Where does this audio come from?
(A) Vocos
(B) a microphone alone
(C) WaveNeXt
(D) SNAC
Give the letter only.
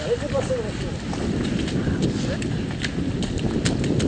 B